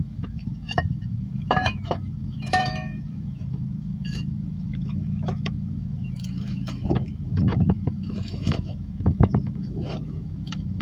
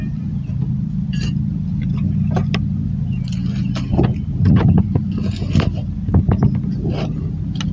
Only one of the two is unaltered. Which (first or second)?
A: second